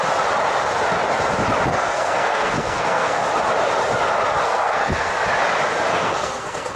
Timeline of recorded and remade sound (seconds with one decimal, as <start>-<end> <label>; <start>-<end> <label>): 0.0-1.7 recorded; 1.7-3.2 remade; 3.2-4.4 recorded; 4.4-5.1 remade; 5.1-5.9 recorded; 5.9-6.8 remade